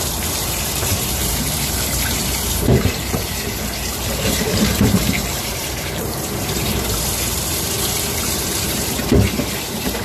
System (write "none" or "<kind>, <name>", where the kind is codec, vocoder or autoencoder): vocoder, BigVGAN v2